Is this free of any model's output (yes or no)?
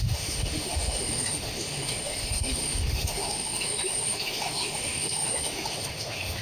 no